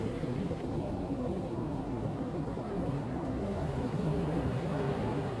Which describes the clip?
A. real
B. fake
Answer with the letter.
B